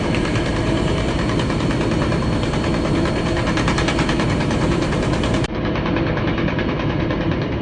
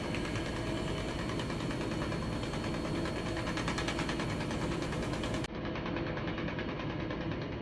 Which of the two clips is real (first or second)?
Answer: second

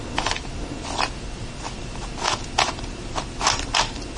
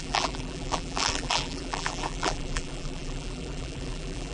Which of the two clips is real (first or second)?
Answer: first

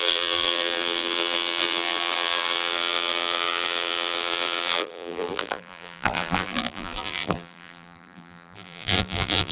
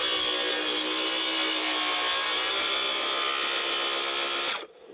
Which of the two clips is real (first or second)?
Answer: second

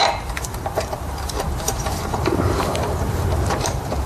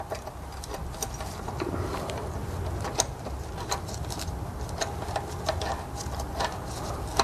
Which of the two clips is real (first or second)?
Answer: second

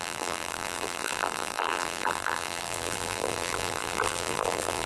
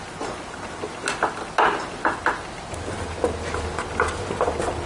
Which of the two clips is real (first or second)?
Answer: second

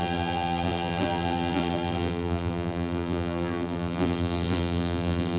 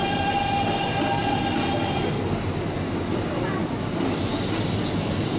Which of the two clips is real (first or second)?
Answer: second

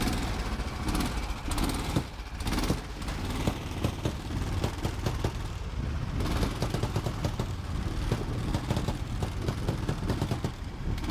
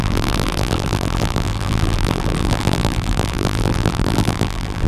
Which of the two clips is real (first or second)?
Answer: first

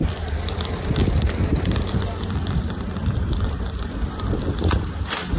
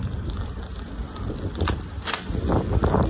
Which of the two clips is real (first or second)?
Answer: second